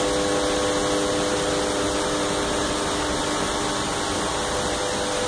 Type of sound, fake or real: real